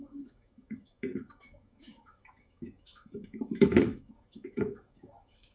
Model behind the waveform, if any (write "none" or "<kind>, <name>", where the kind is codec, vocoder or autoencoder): autoencoder, DAC-VAE